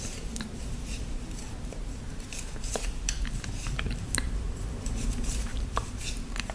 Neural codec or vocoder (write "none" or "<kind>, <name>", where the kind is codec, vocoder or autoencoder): vocoder, BigVGAN v2